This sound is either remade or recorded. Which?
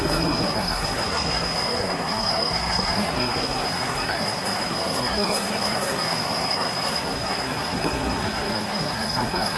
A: remade